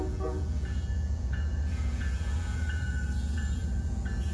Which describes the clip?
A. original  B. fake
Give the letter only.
B